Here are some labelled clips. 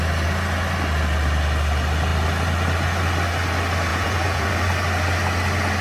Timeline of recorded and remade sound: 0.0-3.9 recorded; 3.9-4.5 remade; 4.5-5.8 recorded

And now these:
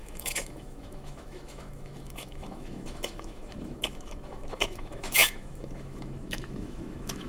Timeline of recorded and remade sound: 0.0-7.3 remade

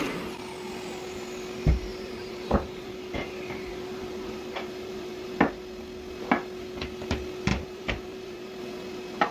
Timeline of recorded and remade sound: 0.0-1.9 recorded; 1.9-5.3 remade; 5.3-7.5 recorded; 7.5-8.6 remade; 8.6-9.3 recorded

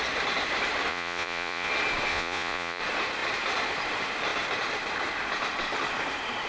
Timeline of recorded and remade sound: 0.0-0.9 recorded; 0.9-1.7 remade; 1.7-2.1 recorded; 2.1-2.8 remade; 2.8-6.5 recorded